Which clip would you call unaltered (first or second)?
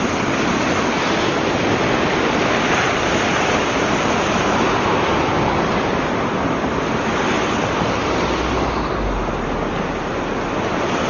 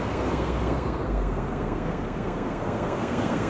first